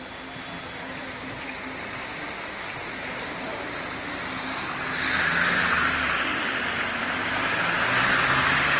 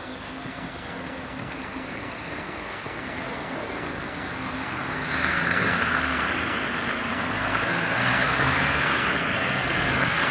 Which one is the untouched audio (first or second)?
first